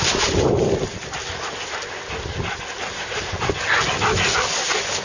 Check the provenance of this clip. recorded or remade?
recorded